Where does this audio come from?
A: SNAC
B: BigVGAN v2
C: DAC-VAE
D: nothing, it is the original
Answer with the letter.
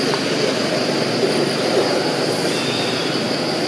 D